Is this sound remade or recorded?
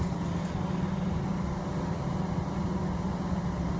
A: recorded